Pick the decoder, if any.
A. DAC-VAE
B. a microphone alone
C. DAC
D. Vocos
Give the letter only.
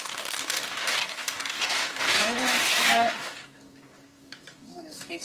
C